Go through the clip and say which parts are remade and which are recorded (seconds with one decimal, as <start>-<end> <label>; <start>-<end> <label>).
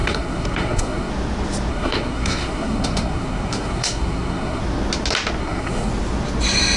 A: 0.0-1.1 remade; 1.1-1.7 recorded; 1.7-4.6 remade; 4.6-5.4 recorded; 5.4-5.9 remade; 5.9-6.8 recorded